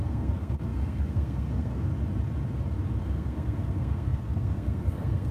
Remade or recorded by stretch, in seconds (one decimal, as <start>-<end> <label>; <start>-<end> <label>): 0.0-1.9 remade; 1.9-3.0 recorded; 3.0-5.3 remade

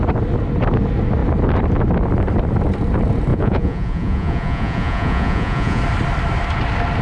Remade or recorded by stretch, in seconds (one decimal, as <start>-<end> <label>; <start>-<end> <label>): 0.0-3.3 recorded; 3.3-5.8 remade; 5.8-7.0 recorded

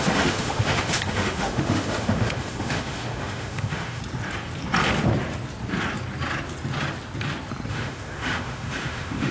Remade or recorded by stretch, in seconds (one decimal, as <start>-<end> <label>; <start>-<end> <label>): 0.0-4.0 remade; 4.0-7.7 recorded; 7.7-9.3 remade

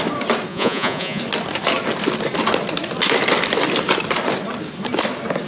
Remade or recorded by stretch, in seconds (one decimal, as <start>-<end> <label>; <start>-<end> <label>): 0.0-0.5 recorded; 0.5-1.2 remade; 1.2-5.5 recorded

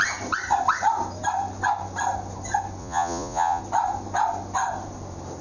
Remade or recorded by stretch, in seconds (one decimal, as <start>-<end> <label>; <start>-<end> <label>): 0.0-2.8 recorded; 2.8-3.6 remade; 3.6-5.4 recorded

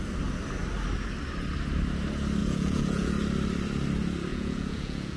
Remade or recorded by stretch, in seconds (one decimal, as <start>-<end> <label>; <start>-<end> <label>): 0.0-2.4 recorded; 2.4-3.1 remade; 3.1-4.3 recorded; 4.3-5.2 remade

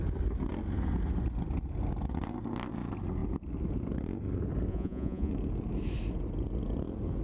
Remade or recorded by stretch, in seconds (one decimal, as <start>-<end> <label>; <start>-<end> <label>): 0.0-4.7 recorded; 4.7-5.3 remade; 5.3-7.2 recorded